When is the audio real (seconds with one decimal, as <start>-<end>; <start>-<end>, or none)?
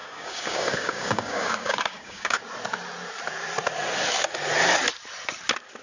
2.4-5.8